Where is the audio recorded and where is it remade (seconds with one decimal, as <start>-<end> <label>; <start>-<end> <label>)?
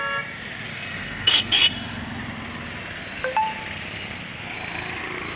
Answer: 0.0-0.7 recorded; 0.7-1.7 remade; 1.7-5.4 recorded